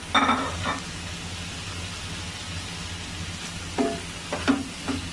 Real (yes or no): yes